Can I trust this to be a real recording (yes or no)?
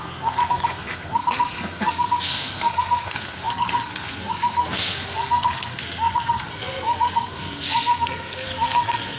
no